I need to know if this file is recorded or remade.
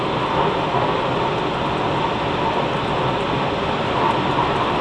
recorded